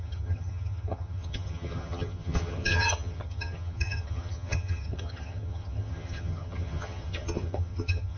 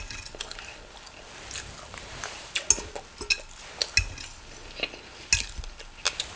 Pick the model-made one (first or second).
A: first